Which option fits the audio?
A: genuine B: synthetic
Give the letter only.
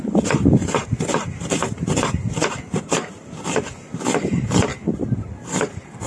A